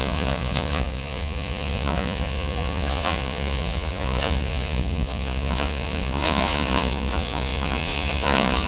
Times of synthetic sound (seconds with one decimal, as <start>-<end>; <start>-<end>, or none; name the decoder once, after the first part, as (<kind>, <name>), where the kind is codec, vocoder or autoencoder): 0.0-8.7 (vocoder, Vocos)